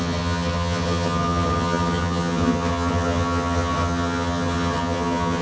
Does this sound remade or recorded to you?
remade